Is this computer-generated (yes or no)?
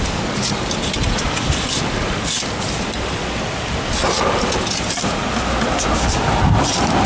no